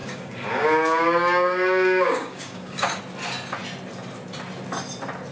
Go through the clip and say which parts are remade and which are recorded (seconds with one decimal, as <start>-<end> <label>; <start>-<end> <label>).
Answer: 0.0-3.0 remade; 3.0-5.3 recorded